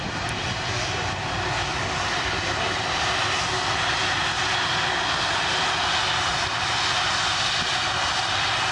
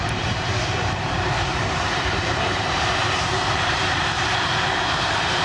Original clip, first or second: first